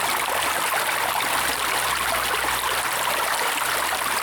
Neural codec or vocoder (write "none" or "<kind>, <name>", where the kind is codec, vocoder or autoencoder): vocoder, BigVGAN v2